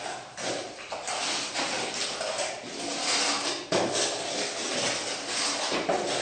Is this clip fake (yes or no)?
no